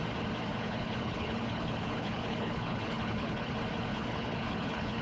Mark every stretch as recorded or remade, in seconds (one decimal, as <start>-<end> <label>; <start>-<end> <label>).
0.0-0.5 recorded; 0.5-3.5 remade; 3.5-3.9 recorded; 3.9-5.0 remade